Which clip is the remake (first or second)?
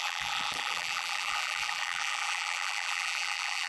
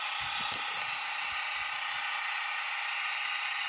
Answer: first